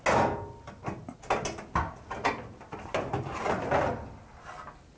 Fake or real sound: real